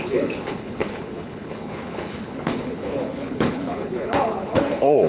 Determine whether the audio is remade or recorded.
remade